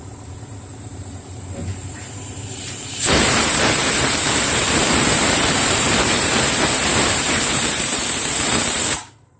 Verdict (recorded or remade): remade